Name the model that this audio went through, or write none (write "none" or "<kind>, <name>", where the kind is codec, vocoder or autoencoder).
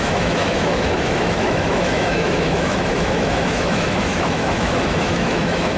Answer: autoencoder, DAC-VAE